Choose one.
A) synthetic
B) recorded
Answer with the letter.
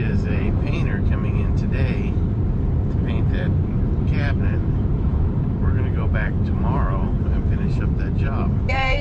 A